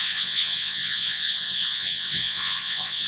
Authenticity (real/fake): fake